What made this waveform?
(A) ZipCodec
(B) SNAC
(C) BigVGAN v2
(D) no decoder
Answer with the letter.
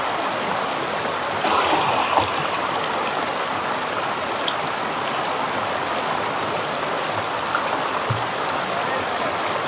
D